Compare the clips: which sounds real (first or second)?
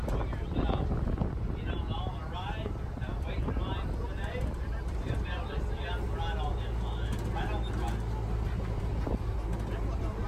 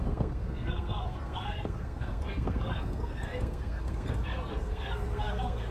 first